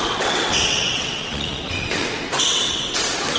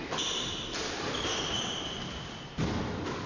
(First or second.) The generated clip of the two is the first